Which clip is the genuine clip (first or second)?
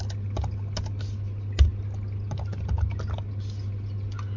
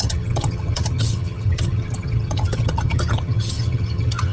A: first